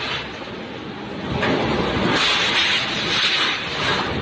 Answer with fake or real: real